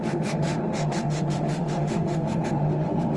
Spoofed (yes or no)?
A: yes